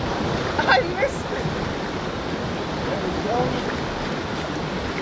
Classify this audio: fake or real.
real